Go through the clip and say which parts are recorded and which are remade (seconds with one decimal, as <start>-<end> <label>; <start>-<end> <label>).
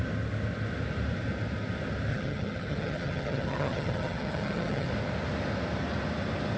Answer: 0.0-2.1 recorded; 2.1-4.9 remade; 4.9-6.6 recorded